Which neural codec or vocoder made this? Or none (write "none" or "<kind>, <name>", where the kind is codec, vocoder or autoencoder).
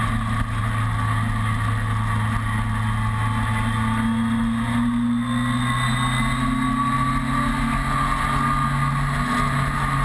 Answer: none